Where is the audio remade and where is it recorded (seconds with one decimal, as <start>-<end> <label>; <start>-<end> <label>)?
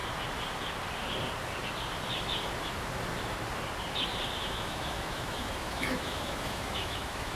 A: 0.0-4.4 recorded; 4.4-7.4 remade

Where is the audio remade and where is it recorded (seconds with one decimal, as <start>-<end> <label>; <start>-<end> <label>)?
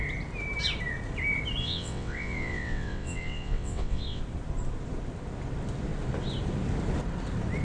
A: 0.0-1.6 recorded; 1.6-4.2 remade; 4.2-7.6 recorded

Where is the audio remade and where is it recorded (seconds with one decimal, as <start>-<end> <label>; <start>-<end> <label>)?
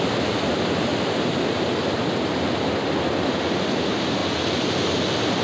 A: 0.0-0.9 remade; 0.9-3.2 recorded; 3.2-4.2 remade; 4.2-5.4 recorded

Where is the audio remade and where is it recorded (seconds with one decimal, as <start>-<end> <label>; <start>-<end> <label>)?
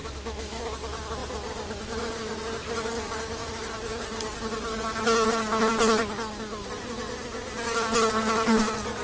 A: 0.0-0.6 remade; 0.6-9.0 recorded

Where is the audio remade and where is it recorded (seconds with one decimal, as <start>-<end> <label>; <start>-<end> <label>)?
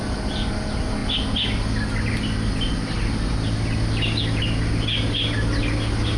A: 0.0-6.2 recorded